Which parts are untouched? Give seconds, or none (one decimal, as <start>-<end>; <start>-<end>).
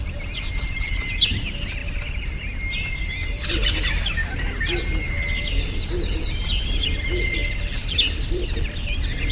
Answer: 3.6-5.9; 7.4-8.2